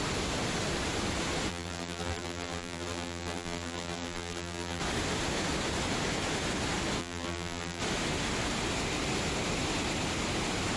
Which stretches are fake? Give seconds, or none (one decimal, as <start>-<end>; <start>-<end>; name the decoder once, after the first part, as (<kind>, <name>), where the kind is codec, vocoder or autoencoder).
1.5-4.8 (vocoder, BigVGAN v2); 7.0-7.8